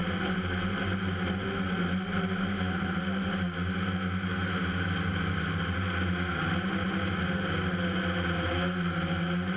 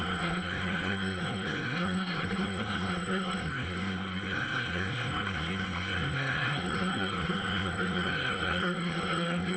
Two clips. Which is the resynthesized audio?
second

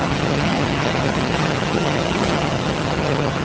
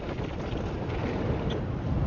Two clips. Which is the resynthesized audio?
first